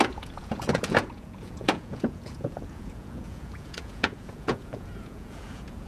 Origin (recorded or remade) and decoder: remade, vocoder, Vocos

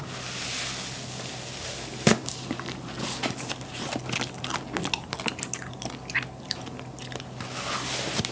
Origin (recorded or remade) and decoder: recorded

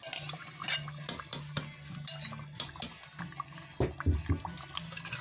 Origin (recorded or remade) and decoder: recorded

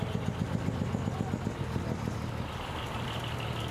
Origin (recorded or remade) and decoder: recorded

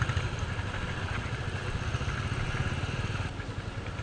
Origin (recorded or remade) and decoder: recorded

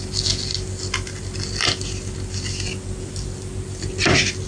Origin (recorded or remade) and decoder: recorded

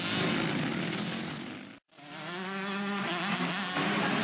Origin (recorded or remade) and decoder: recorded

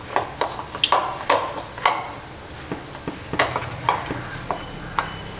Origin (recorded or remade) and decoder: recorded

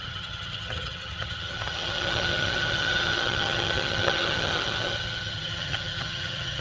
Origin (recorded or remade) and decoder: remade, vocoder, HiFi-GAN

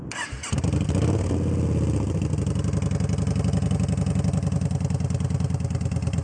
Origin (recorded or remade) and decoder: recorded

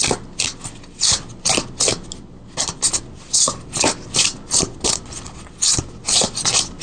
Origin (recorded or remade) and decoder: recorded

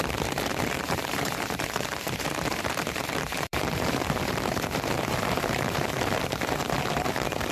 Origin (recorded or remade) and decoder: remade, vocoder, BigVGAN v2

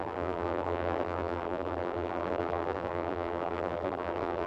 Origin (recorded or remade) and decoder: remade, vocoder, BigVGAN v2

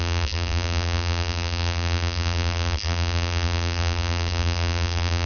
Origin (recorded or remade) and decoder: remade, vocoder, BigVGAN v2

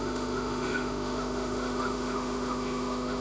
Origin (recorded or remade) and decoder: remade, autoencoder, DAC-VAE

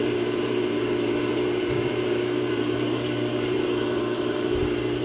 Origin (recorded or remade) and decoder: remade, vocoder, BigVGAN v2